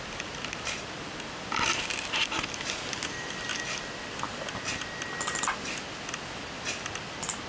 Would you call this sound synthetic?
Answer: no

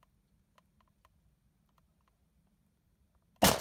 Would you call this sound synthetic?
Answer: no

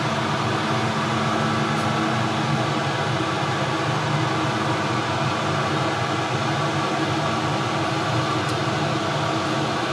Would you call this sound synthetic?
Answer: no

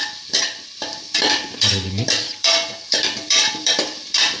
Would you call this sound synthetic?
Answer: yes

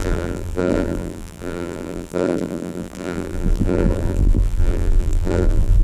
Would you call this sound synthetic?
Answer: yes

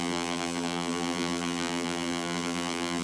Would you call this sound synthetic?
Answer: yes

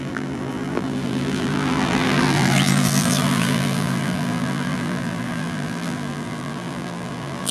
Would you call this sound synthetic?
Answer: yes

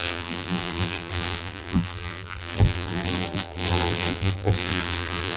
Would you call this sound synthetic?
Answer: yes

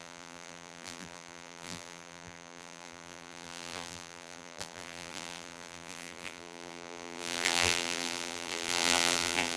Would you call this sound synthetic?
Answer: yes